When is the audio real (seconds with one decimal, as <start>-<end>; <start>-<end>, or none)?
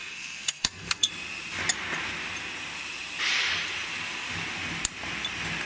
1.1-5.7